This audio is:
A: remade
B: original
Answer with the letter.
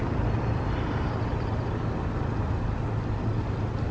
B